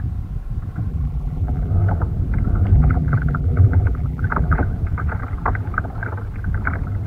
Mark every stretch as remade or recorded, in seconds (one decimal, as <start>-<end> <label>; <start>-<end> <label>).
0.0-0.9 recorded; 0.9-1.7 remade; 1.7-2.7 recorded; 2.7-4.6 remade; 4.6-7.1 recorded